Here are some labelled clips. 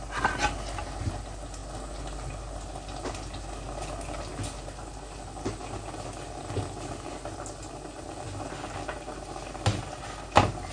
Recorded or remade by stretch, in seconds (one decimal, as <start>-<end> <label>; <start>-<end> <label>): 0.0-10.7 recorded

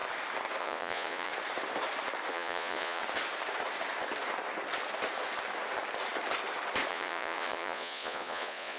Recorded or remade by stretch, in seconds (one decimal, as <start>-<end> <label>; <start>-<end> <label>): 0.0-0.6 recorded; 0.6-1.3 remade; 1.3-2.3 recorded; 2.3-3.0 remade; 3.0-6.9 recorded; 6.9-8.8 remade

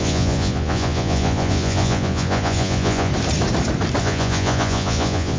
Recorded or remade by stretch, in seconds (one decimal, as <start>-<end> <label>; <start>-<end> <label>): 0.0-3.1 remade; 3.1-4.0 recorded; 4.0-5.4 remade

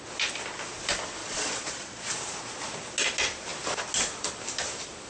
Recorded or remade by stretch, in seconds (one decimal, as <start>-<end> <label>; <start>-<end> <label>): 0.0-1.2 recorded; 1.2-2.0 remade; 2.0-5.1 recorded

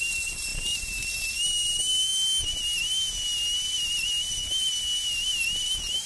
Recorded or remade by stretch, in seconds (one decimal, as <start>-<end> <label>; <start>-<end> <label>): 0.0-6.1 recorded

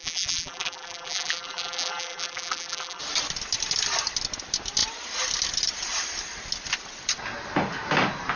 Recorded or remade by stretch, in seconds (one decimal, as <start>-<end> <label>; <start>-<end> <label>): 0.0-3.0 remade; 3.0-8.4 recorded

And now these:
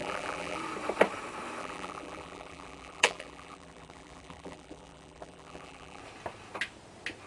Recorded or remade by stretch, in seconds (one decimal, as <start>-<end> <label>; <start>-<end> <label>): 0.0-0.6 remade; 0.6-1.6 recorded; 1.6-6.0 remade; 6.0-7.3 recorded